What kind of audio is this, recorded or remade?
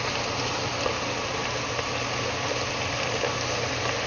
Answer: recorded